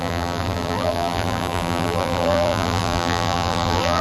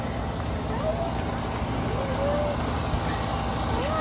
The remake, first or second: first